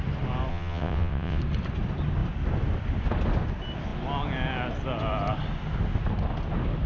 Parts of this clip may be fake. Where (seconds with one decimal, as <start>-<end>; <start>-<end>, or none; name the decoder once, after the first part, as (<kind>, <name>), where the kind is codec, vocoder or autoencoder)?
0.5-1.4 (vocoder, WaveNeXt)